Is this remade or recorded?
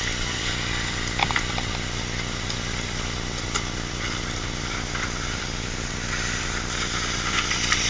recorded